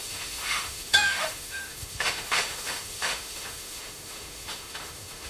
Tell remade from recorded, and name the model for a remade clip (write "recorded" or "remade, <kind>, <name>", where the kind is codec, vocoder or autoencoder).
remade, autoencoder, DAC-VAE